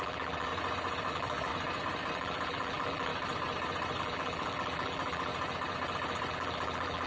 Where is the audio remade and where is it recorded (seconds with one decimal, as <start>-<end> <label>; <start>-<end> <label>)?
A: 0.0-0.5 remade; 0.5-1.1 recorded; 1.1-1.5 remade; 1.5-2.1 recorded; 2.1-3.1 remade; 3.1-4.0 recorded; 4.0-5.3 remade; 5.3-6.3 recorded; 6.3-7.1 remade